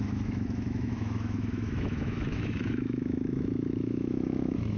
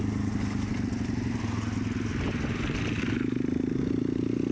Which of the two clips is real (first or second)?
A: second